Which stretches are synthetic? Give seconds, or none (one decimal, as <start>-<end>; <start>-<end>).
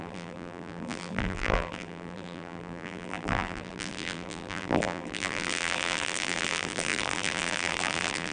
0.0-8.3